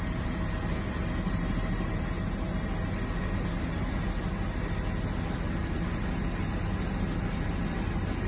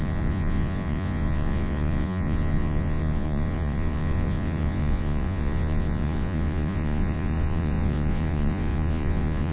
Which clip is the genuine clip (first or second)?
first